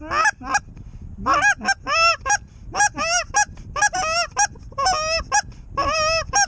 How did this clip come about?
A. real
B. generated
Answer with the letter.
A